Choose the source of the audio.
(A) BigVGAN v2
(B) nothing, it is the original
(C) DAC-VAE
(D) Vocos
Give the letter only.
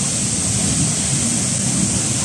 B